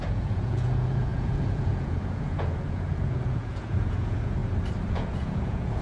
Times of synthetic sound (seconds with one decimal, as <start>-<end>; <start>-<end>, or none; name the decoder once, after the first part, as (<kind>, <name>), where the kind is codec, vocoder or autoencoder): 0.0-4.4 (vocoder, Vocos); 4.9-5.8